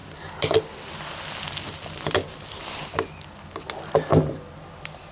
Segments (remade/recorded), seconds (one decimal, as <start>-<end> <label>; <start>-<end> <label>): 0.0-5.1 recorded